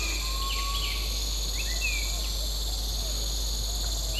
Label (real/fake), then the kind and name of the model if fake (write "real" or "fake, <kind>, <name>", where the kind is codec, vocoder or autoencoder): real